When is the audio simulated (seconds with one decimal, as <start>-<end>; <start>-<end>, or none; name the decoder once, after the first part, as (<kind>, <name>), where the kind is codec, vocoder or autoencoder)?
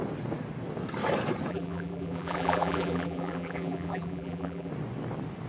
1.5-4.7 (vocoder, BigVGAN v2)